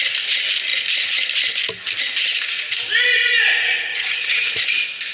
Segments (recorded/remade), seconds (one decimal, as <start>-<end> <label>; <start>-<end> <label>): 0.0-3.9 recorded; 3.9-4.5 remade; 4.5-5.1 recorded

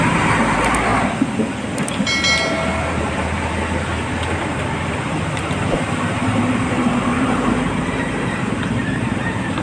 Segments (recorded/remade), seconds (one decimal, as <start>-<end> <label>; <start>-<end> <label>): 0.0-0.9 remade; 0.9-4.4 recorded; 4.4-9.6 remade

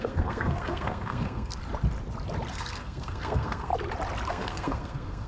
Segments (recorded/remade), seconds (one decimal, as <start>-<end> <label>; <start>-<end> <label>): 0.0-1.6 remade; 1.6-2.5 recorded; 2.5-3.7 remade; 3.7-4.3 recorded; 4.3-5.3 remade

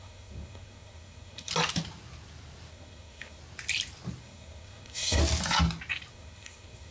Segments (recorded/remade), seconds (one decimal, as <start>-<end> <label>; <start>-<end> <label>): 0.0-1.5 remade; 1.5-2.7 recorded; 2.7-3.4 remade; 3.4-4.2 recorded; 4.2-5.2 remade; 5.2-6.1 recorded; 6.1-6.9 remade

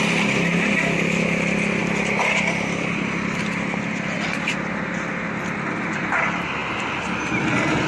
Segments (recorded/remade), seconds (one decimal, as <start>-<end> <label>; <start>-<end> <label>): 0.0-7.9 recorded

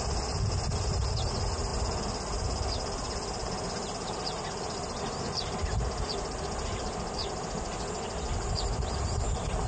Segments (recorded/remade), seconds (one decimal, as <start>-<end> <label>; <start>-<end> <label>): 0.0-9.7 recorded